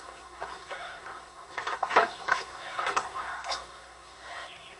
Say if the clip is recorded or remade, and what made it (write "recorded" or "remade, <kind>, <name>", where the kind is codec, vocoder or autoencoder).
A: remade, codec, SNAC